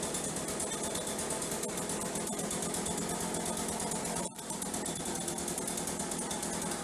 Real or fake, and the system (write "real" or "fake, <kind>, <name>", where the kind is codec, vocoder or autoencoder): real